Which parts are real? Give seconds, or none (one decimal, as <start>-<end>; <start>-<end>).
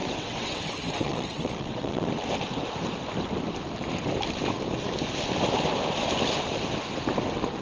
2.1-7.6